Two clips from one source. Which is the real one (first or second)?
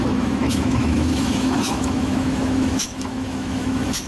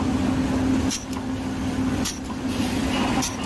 second